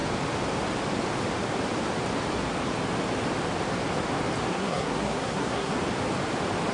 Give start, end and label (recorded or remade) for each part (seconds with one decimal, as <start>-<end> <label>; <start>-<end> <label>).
0.0-4.5 recorded; 4.5-5.7 remade; 5.7-6.7 recorded